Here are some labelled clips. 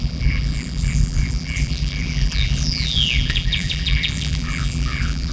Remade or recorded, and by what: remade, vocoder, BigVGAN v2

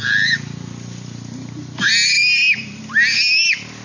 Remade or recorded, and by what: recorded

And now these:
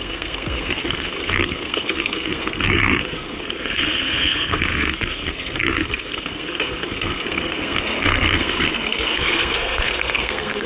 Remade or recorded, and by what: remade, codec, SNAC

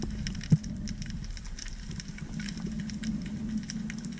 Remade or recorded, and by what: recorded